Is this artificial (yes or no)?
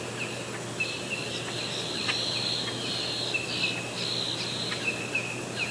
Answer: no